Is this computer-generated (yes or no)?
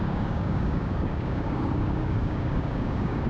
yes